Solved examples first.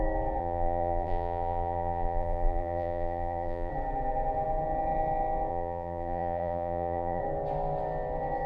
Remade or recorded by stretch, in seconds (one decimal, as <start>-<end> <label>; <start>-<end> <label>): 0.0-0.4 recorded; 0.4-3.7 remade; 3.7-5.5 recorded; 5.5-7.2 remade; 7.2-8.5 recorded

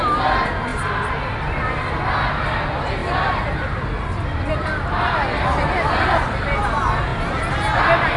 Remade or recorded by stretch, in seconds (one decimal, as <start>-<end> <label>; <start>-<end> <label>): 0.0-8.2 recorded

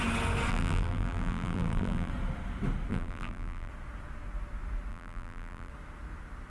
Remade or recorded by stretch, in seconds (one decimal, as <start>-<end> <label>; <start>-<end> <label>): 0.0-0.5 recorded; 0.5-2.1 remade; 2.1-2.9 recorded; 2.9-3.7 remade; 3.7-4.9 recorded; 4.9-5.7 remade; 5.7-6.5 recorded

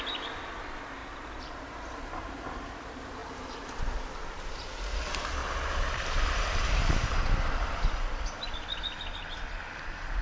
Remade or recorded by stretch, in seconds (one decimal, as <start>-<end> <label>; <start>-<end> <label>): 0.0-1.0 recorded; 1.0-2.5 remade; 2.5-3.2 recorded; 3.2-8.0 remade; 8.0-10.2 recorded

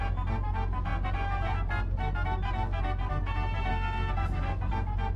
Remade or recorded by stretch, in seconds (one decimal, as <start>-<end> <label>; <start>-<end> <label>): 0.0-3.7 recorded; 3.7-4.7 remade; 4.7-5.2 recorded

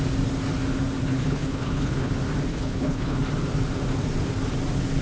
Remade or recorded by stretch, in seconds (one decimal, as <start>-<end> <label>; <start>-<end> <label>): 0.0-1.1 recorded; 1.1-2.1 remade; 2.1-2.5 recorded; 2.5-3.2 remade; 3.2-5.0 recorded